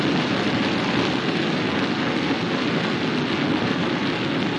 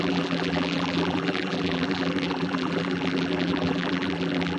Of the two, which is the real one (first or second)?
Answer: first